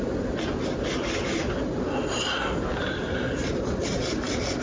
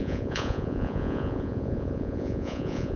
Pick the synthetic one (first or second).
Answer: second